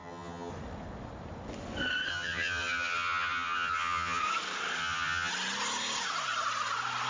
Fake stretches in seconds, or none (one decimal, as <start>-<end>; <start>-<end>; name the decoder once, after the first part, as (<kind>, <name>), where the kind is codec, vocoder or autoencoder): 0.0-0.5 (vocoder, HiFi-GAN); 2.1-4.2; 4.8-5.3